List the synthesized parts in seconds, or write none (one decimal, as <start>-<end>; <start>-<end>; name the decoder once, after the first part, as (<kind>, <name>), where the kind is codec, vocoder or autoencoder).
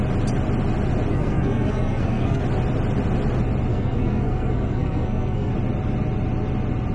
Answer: 1.1-2.4 (codec, SNAC); 3.7-5.5